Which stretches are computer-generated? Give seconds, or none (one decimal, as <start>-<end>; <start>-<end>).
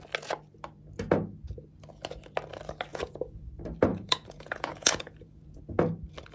2.9-3.5; 3.9-5.6